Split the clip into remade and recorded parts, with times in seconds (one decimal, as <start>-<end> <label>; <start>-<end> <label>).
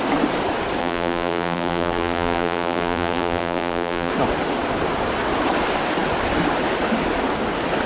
0.0-0.8 recorded; 0.8-4.1 remade; 4.1-7.9 recorded